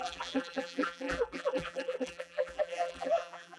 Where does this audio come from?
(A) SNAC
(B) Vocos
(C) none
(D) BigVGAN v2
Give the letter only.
D